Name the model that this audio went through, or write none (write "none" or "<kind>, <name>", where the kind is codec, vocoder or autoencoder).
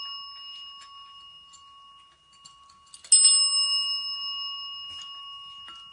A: none